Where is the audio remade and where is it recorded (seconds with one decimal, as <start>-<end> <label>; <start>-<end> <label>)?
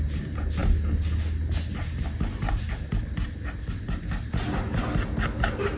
0.0-5.8 recorded